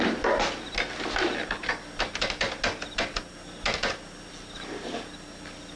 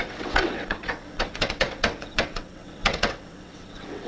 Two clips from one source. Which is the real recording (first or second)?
first